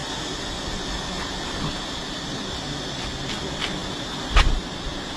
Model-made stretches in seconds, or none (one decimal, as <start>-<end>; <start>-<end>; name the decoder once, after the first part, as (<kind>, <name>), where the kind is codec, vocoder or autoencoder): none